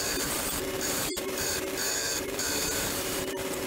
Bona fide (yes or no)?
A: no